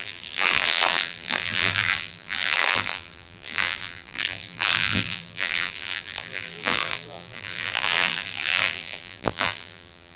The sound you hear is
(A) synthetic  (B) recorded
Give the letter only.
A